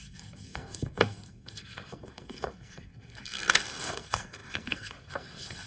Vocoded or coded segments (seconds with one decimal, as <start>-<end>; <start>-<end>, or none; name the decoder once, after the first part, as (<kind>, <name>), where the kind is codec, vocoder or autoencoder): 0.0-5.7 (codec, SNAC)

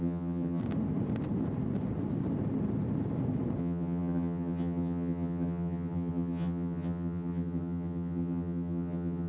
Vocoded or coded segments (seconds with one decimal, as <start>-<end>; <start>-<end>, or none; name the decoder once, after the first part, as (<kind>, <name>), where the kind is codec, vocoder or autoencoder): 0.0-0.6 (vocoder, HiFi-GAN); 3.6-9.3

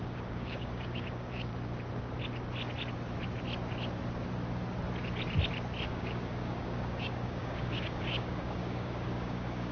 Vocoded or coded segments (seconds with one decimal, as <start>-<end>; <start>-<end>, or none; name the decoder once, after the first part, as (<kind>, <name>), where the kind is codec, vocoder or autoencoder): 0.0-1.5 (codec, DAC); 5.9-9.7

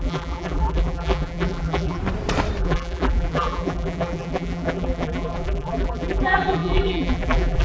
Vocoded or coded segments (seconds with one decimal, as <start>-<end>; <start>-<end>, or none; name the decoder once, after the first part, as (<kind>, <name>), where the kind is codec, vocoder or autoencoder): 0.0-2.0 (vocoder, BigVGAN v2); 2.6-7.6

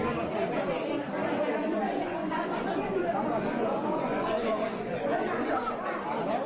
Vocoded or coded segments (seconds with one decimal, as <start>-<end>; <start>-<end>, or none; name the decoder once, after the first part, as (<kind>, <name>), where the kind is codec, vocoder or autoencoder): 1.6-5.5 (vocoder, Vocos)